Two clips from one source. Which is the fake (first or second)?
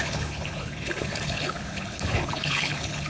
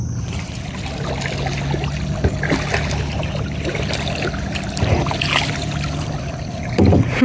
first